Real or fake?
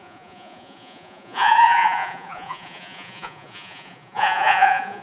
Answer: fake